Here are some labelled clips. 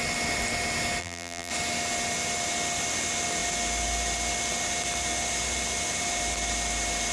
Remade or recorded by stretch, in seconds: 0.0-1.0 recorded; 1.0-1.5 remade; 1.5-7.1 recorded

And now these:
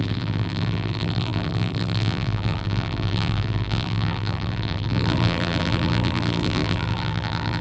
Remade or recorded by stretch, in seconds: 0.0-7.6 remade

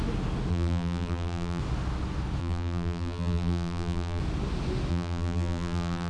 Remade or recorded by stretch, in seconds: 0.0-0.5 recorded; 0.5-1.6 remade; 1.6-2.4 recorded; 2.4-4.2 remade; 4.2-4.9 recorded; 4.9-6.1 remade

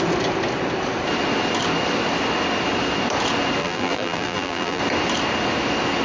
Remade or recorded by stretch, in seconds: 0.0-3.6 recorded; 3.6-4.8 remade; 4.8-6.0 recorded

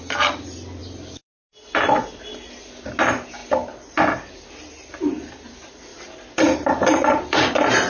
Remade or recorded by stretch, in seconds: 0.0-3.4 remade; 3.4-4.5 recorded; 4.5-7.9 remade

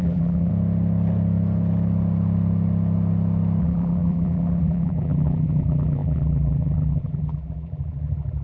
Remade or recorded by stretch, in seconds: 0.0-0.5 remade; 0.5-3.6 recorded; 3.6-8.4 remade

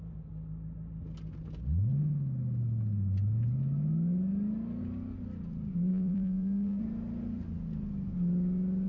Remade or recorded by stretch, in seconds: 0.0-5.9 recorded; 5.9-6.8 remade; 6.8-8.9 recorded